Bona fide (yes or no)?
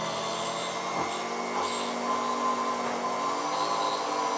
yes